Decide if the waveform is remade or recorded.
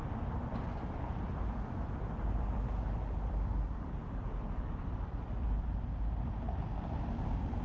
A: remade